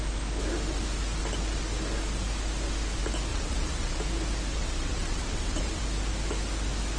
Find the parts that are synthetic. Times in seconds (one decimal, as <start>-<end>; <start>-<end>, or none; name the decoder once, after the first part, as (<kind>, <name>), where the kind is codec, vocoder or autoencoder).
3.3-4.0 (vocoder, WaveNeXt); 4.5-5.8